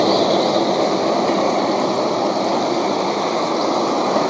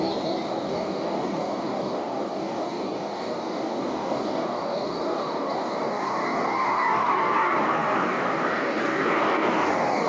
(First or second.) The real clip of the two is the first